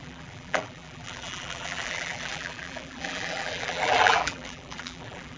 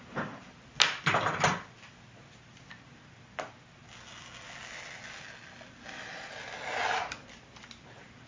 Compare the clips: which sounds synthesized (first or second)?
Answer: first